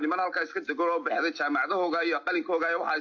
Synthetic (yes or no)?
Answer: no